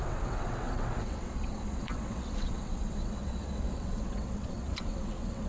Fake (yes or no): yes